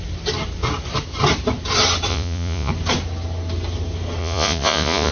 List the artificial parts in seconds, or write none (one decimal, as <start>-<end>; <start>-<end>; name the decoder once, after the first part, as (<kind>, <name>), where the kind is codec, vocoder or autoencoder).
2.1-2.7 (vocoder, Vocos); 4.2-5.1